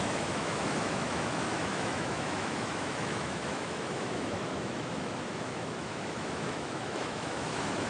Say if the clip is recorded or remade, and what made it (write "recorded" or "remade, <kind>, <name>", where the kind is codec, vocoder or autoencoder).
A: remade, autoencoder, DAC-VAE